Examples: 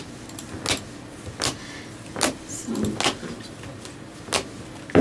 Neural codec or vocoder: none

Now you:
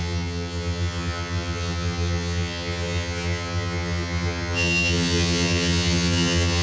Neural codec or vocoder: vocoder, HiFi-GAN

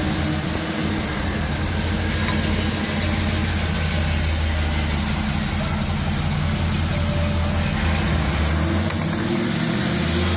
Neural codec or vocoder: none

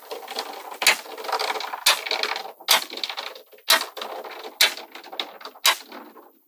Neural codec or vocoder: none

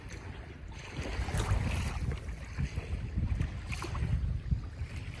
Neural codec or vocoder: none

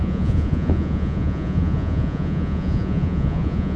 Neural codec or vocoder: vocoder, Vocos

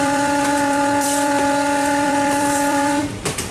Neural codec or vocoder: vocoder, BigVGAN v2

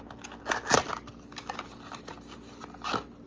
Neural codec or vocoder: none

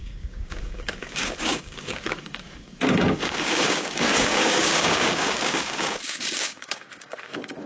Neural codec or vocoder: codec, DAC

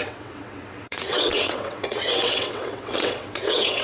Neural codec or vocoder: vocoder, WaveNeXt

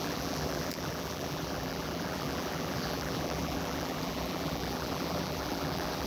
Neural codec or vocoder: vocoder, BigVGAN v2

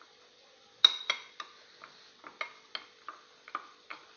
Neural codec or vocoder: none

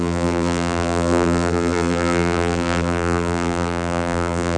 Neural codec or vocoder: vocoder, BigVGAN v2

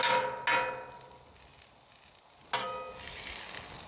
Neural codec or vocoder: none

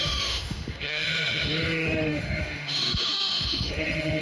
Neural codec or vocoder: autoencoder, DAC-VAE